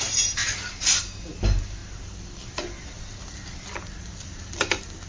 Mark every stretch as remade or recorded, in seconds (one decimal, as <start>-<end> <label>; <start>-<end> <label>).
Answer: 0.0-0.4 remade; 0.4-1.0 recorded; 1.0-5.1 remade